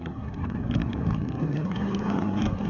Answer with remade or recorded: remade